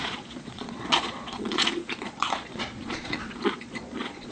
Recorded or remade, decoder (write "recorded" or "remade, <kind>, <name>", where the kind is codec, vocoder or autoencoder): remade, vocoder, Vocos